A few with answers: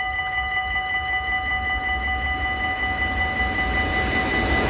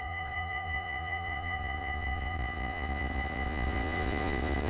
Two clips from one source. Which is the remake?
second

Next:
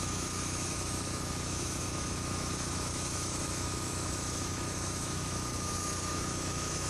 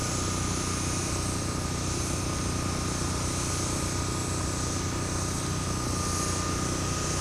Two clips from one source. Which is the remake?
first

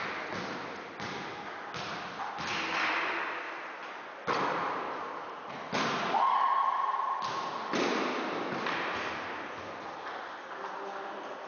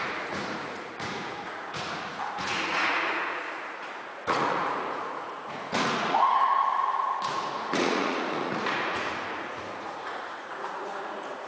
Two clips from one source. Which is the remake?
second